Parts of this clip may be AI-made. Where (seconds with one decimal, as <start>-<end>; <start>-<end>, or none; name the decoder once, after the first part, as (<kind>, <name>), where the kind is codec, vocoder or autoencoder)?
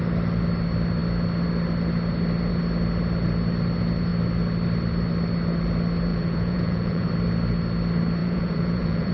6.1-7.1 (vocoder, Vocos); 8.2-9.1